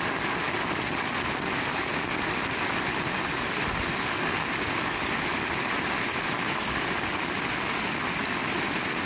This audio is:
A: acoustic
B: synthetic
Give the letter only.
A